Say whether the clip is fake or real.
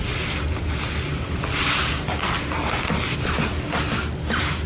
real